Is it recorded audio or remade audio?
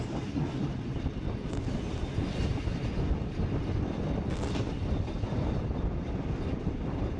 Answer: recorded